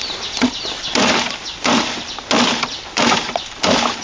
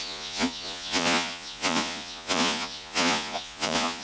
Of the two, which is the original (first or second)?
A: first